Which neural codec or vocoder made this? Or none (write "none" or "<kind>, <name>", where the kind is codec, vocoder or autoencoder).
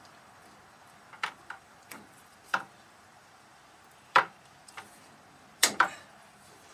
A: vocoder, BigVGAN v2